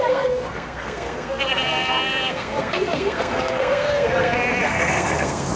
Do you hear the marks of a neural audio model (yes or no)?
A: yes